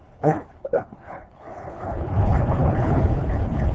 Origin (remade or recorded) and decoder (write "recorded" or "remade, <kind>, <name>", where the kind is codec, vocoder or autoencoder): remade, codec, HILCodec